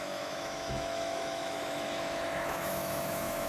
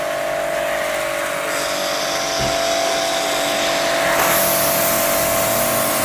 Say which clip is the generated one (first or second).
first